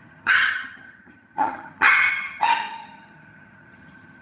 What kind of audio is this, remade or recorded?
remade